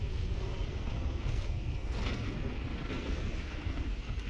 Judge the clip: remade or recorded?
remade